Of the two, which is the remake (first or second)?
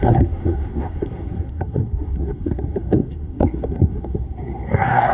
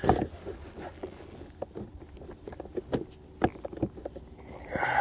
first